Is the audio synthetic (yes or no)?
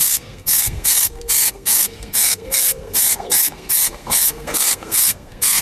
yes